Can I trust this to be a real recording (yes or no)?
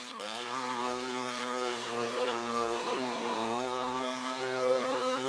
no